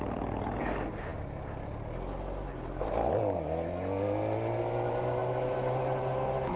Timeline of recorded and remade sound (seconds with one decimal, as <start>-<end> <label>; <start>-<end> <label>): 0.0-6.6 recorded